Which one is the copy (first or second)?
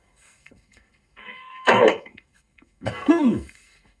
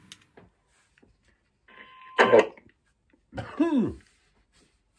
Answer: first